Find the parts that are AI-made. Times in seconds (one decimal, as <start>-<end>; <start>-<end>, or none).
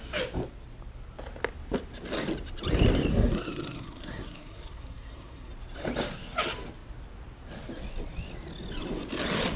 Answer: 3.1-5.5